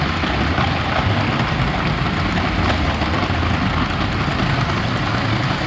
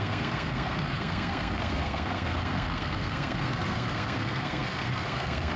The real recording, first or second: first